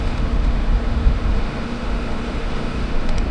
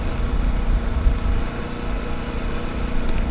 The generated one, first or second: first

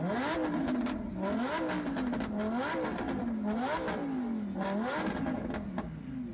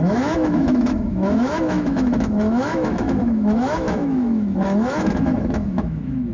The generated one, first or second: second